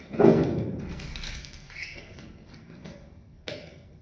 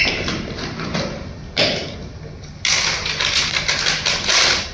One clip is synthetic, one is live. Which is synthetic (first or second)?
first